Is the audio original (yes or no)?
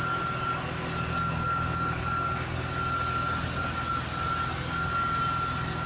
yes